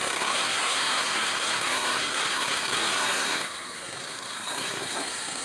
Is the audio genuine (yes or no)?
no